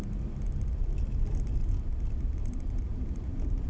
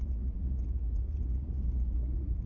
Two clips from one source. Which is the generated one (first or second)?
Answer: second